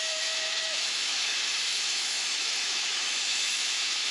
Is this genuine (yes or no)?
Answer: no